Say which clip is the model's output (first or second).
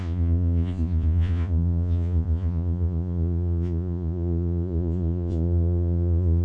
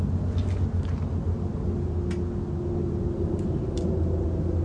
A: first